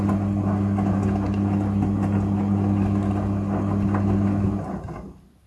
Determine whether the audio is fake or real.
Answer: real